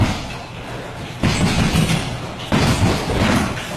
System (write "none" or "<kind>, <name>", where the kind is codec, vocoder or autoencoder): none